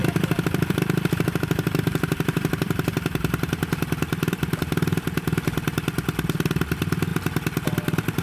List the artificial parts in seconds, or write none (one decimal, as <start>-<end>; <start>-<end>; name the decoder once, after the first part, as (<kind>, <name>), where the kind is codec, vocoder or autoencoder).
0.0-4.6 (vocoder, BigVGAN v2)